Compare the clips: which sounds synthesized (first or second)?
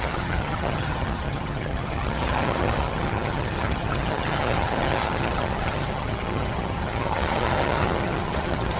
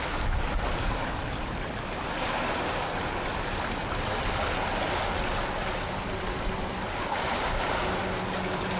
first